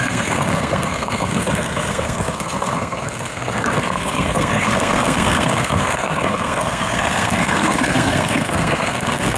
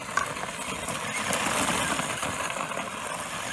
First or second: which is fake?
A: first